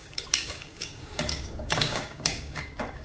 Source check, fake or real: fake